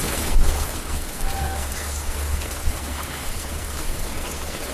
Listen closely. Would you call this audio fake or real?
fake